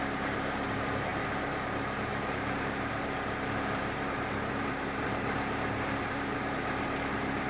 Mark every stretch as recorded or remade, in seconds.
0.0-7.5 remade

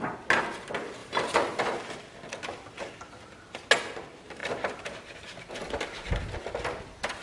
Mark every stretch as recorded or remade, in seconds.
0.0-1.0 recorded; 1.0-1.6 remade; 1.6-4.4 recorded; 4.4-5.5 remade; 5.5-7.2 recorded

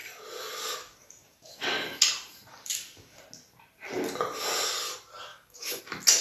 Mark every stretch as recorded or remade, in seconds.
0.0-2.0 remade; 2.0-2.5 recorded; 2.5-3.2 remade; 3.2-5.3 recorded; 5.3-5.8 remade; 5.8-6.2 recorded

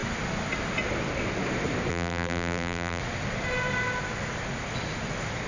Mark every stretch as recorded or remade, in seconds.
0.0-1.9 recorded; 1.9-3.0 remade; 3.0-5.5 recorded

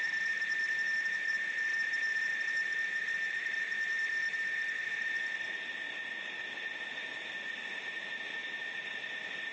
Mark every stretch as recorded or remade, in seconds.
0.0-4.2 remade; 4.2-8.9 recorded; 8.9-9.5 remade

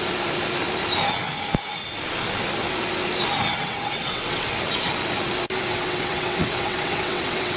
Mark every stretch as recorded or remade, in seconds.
0.0-3.5 recorded; 3.5-4.4 remade; 4.4-5.7 recorded; 5.7-7.6 remade